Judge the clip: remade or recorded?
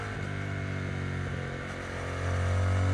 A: recorded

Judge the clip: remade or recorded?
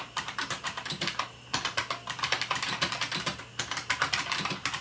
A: remade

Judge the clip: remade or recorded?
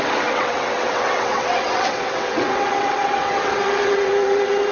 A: remade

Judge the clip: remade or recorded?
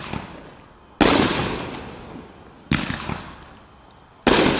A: recorded